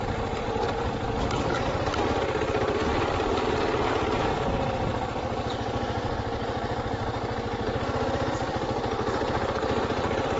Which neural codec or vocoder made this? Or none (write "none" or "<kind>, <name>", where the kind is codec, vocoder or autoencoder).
vocoder, BigVGAN v2